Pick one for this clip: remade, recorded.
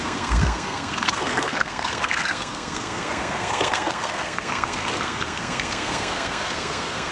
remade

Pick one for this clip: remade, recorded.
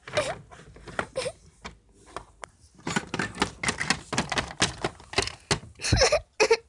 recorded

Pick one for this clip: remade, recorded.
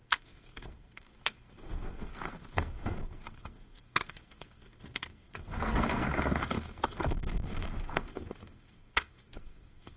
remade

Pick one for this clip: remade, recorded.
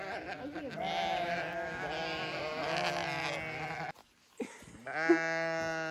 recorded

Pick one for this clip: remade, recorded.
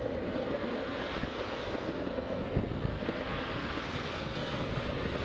remade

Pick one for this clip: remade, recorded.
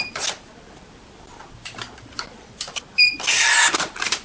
recorded